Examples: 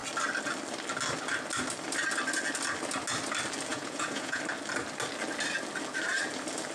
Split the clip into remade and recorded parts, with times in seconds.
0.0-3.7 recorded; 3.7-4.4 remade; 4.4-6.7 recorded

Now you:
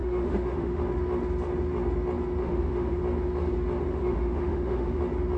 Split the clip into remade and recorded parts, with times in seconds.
0.0-0.8 remade; 0.8-2.4 recorded; 2.4-3.0 remade; 3.0-3.9 recorded; 3.9-5.0 remade; 5.0-5.4 recorded